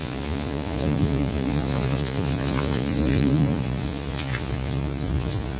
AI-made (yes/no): yes